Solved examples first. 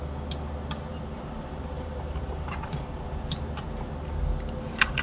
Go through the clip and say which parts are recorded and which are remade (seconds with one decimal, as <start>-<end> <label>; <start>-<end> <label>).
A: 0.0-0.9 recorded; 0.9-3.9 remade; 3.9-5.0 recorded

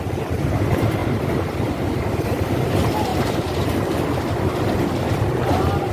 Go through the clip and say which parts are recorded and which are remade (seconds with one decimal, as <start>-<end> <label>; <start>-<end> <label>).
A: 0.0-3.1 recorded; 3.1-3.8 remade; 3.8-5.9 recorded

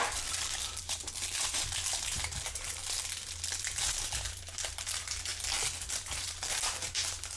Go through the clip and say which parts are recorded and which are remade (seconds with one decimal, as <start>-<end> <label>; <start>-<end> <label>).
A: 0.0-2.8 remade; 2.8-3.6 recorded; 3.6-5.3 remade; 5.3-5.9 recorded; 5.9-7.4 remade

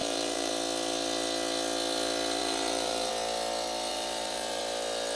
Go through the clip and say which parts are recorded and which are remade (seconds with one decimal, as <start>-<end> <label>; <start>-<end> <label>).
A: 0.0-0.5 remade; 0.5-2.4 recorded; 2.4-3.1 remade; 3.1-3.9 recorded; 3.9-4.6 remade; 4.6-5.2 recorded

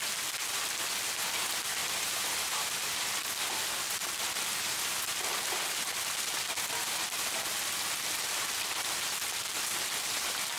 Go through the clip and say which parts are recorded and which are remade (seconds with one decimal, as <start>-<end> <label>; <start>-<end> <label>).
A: 0.0-1.8 recorded; 1.8-2.7 remade; 2.7-10.6 recorded

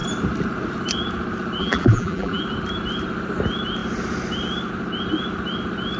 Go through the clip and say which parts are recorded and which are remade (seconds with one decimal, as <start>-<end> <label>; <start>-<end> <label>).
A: 0.0-1.6 recorded; 1.6-2.4 remade; 2.4-6.0 recorded

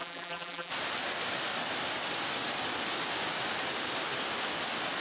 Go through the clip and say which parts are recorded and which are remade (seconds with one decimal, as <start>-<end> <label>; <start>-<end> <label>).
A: 0.0-0.7 remade; 0.7-5.0 recorded